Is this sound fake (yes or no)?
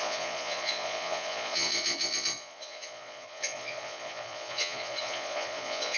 yes